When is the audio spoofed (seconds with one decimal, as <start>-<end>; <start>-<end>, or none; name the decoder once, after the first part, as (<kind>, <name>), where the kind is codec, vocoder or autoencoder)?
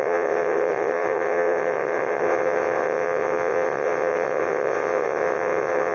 0.0-5.9 (vocoder, WaveNeXt)